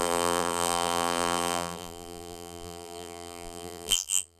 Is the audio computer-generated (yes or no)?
yes